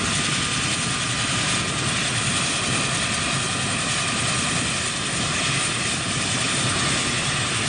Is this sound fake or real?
real